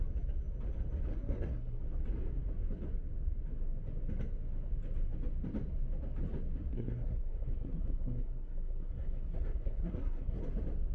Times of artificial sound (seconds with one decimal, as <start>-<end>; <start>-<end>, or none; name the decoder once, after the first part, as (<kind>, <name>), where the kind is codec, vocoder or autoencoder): 1.1-1.8 (codec, SNAC); 6.7-10.4